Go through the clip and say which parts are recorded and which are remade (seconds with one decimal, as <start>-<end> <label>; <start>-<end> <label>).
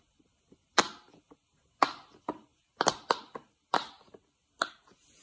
0.0-5.2 recorded